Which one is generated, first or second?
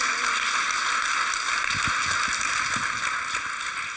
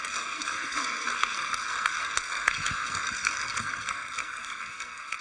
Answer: second